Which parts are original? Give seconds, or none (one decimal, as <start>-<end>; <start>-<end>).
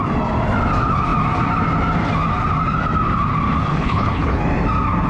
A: 0.0-3.7; 4.4-5.1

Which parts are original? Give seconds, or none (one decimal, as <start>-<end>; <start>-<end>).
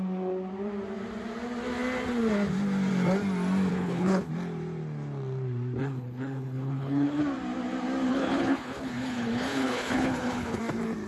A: 0.0-3.7; 4.3-5.8; 7.2-8.1; 10.6-11.1